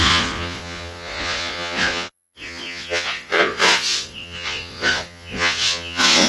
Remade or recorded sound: remade